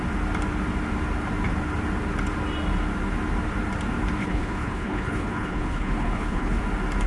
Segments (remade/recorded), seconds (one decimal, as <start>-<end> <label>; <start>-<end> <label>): 0.0-4.2 recorded; 4.2-6.6 remade; 6.6-7.1 recorded